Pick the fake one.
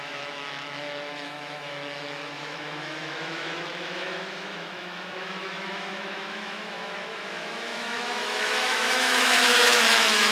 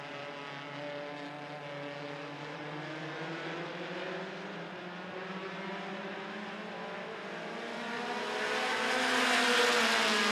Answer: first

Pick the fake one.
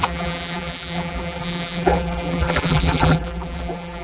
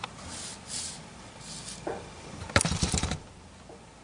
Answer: first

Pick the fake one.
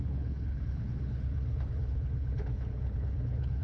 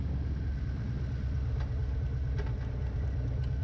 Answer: first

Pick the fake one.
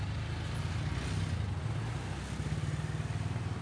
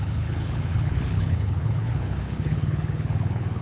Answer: second